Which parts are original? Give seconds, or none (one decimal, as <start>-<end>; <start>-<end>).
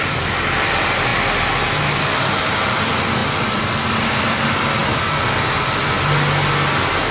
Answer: 0.0-4.8; 5.8-7.1